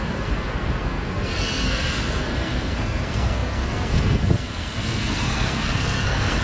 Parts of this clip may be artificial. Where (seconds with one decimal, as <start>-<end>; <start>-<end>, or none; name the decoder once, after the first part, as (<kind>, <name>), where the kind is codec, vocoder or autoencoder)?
0.0-6.4 (codec, SNAC)